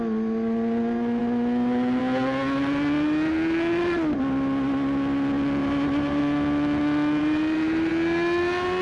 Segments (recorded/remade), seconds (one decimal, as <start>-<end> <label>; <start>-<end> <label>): 0.0-5.6 recorded; 5.6-6.2 remade; 6.2-7.2 recorded; 7.2-7.9 remade; 7.9-8.8 recorded